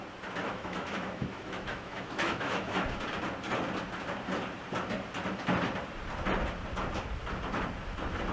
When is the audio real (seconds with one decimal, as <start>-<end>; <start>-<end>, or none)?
0.0-0.4; 3.0-8.3